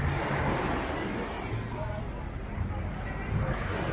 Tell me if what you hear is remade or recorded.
recorded